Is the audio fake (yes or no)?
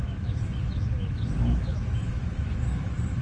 yes